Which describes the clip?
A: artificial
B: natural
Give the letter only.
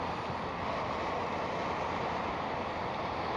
B